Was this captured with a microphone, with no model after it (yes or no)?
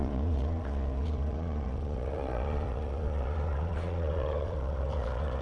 no